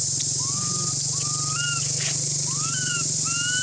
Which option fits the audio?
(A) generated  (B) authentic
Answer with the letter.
B